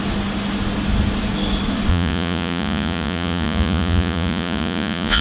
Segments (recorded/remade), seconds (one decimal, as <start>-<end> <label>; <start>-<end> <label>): 0.0-1.9 recorded; 1.9-5.2 remade